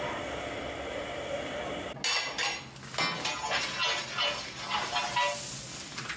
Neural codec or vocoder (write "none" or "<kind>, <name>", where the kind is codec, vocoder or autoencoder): none